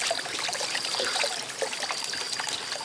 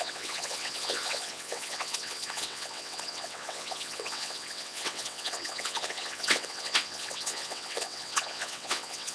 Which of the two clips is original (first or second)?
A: first